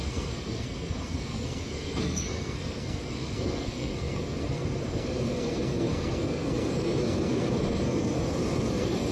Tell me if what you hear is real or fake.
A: fake